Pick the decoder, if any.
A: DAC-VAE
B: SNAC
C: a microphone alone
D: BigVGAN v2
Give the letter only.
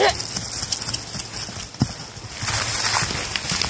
C